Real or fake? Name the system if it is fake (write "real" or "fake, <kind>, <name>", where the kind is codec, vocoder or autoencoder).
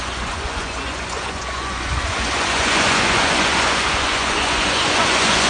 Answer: fake, vocoder, Vocos